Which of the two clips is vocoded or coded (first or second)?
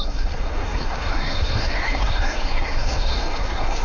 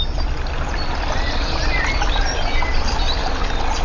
first